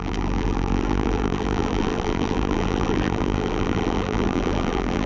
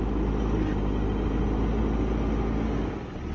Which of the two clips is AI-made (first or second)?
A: first